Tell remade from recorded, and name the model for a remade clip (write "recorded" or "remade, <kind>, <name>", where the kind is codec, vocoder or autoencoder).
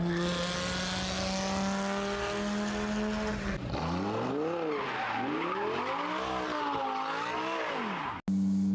recorded